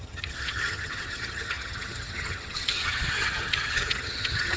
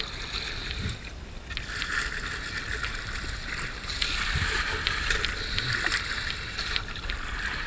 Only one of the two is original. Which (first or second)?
second